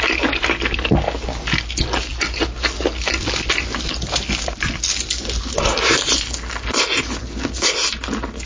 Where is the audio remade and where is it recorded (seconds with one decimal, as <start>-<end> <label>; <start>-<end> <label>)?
0.0-8.5 recorded